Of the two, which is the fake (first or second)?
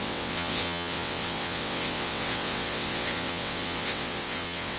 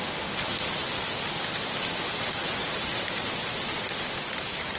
first